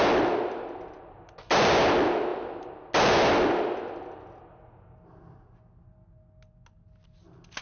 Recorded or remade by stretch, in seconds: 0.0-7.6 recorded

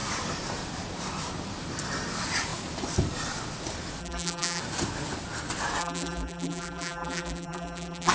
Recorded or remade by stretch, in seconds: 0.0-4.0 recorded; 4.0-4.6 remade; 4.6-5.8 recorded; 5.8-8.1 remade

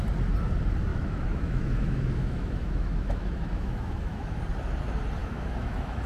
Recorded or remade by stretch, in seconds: 0.0-0.9 recorded; 0.9-4.4 remade; 4.4-5.2 recorded; 5.2-6.1 remade